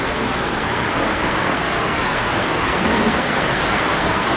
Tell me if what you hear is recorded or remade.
remade